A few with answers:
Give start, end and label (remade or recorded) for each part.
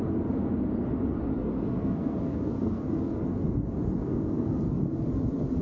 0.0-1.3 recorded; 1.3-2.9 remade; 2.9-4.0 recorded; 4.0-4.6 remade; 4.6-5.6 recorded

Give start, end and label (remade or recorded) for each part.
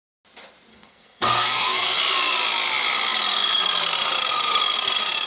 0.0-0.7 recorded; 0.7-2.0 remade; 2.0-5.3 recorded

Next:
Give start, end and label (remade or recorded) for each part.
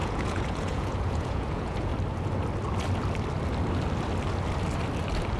0.0-1.9 remade; 1.9-5.4 recorded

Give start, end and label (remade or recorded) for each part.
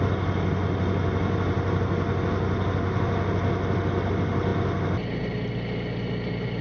0.0-6.6 recorded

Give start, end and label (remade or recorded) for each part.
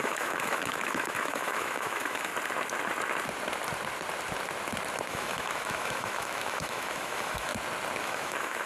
0.0-2.3 remade; 2.3-5.1 recorded; 5.1-7.5 remade; 7.5-8.0 recorded; 8.0-8.7 remade